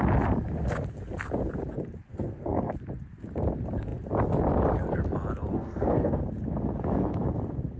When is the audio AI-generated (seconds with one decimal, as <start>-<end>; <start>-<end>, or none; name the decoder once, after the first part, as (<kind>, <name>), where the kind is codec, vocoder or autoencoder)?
2.1-2.7 (codec, SNAC); 5.5-6.2